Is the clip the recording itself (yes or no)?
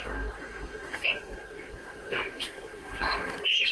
no